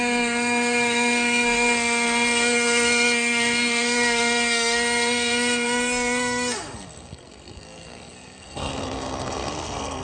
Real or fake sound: fake